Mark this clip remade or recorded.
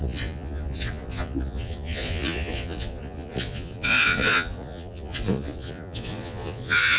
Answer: remade